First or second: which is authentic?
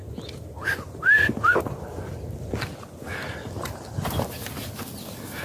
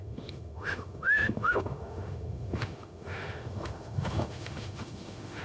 first